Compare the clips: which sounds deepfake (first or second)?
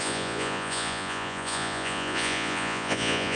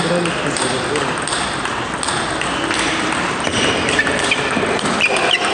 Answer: first